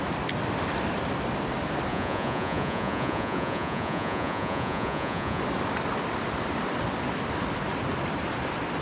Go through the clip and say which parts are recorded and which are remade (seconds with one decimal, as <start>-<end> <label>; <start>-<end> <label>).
0.0-1.9 recorded; 1.9-5.4 remade; 5.4-8.8 recorded